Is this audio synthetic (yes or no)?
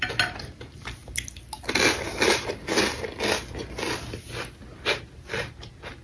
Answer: no